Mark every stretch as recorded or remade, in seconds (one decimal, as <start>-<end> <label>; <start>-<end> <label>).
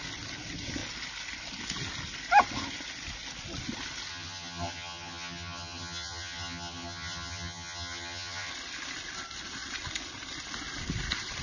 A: 0.0-4.1 recorded; 4.1-8.5 remade; 8.5-11.4 recorded